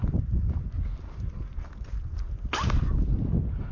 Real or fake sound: real